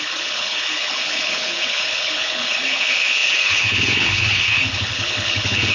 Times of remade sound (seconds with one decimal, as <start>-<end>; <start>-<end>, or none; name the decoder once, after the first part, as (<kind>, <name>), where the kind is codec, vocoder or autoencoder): 0.0-5.7 (codec, HILCodec)